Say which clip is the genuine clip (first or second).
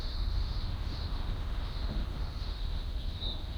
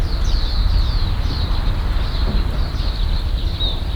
second